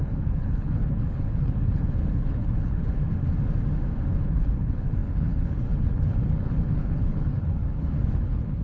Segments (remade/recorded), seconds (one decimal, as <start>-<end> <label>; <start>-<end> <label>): 0.0-3.1 remade; 3.1-4.1 recorded; 4.1-8.6 remade